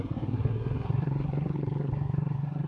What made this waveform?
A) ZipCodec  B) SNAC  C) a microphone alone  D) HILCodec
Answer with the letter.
B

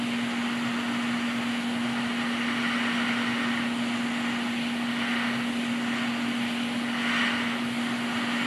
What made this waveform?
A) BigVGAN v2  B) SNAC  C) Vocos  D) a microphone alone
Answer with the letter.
D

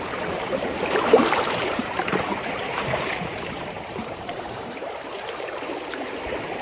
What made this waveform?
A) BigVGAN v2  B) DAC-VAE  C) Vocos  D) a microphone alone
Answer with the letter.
A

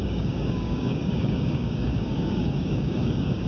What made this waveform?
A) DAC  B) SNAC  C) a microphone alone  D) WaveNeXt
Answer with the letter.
A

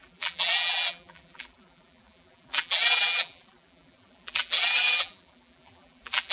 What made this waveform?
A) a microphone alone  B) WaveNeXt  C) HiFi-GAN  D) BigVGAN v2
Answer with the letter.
D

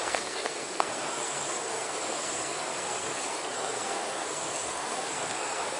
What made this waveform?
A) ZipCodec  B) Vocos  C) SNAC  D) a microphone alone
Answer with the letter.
C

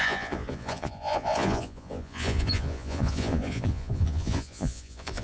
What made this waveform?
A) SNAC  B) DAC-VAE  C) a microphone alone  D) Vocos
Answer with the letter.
D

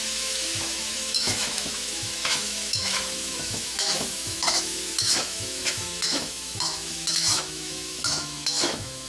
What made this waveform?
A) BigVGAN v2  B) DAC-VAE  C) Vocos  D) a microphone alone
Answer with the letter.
B